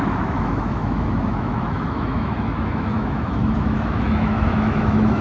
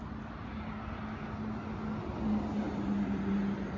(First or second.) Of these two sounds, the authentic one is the second